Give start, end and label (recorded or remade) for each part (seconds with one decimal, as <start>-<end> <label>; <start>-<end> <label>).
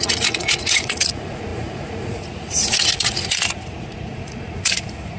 0.0-5.2 remade